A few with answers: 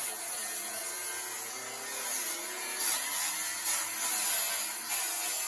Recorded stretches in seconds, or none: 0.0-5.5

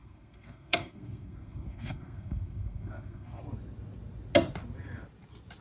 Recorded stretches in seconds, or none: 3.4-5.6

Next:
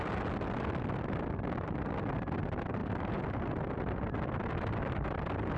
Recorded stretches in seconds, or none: 0.0-5.6

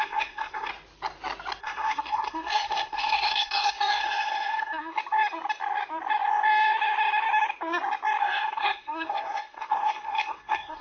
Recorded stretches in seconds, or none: 0.7-1.6; 5.0-8.2